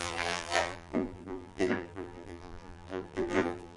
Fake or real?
fake